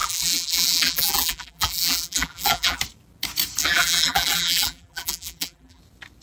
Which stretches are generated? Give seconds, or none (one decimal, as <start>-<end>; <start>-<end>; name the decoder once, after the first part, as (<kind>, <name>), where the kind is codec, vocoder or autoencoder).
0.0-2.8 (vocoder, BigVGAN v2); 3.6-5.8